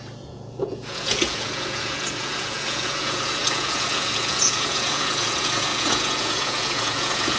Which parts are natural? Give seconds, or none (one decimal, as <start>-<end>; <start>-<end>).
none